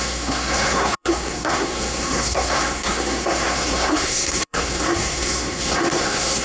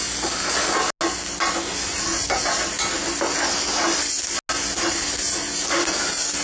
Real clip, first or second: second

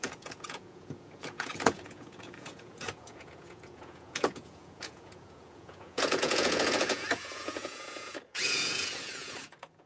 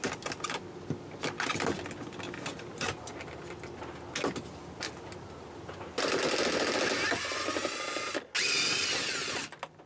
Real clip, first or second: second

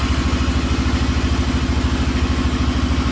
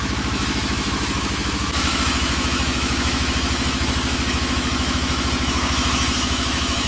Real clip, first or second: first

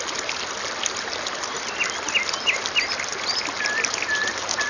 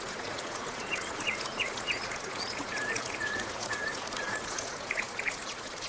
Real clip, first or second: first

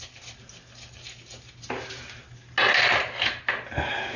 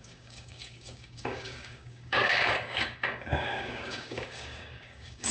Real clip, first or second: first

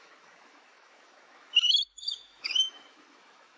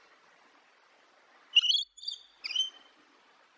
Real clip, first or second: second